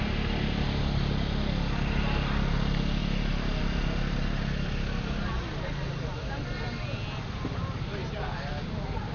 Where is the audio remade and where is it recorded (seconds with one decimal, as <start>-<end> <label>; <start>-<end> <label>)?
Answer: 0.0-9.1 recorded